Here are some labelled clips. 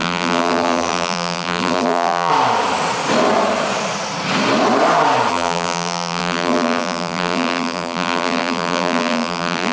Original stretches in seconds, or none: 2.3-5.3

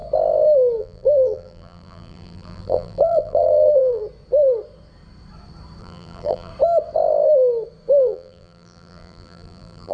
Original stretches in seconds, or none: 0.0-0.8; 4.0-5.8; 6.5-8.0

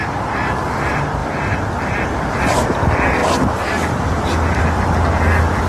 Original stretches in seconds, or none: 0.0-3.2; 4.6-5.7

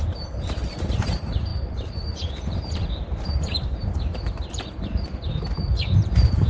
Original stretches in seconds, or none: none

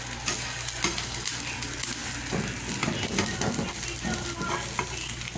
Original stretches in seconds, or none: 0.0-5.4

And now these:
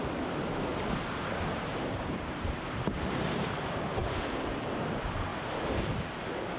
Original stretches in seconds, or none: 0.0-0.7; 3.3-6.6

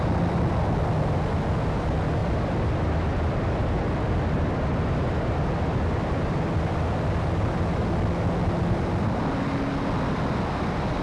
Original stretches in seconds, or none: 0.0-11.0